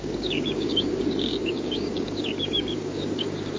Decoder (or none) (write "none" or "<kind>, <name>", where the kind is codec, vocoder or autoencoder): codec, DAC